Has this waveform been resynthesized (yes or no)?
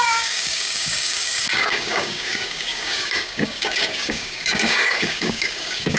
yes